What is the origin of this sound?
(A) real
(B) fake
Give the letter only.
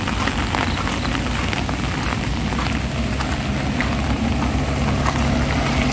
A